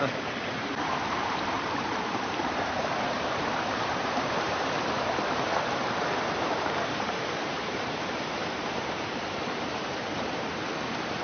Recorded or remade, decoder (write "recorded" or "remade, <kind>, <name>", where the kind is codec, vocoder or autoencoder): remade, vocoder, BigVGAN v2